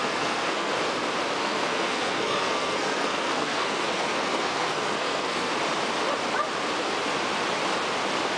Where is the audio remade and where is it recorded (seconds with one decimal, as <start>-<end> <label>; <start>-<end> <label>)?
0.0-0.7 remade; 0.7-1.4 recorded; 1.4-5.5 remade; 5.5-8.4 recorded